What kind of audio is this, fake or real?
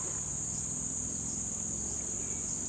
real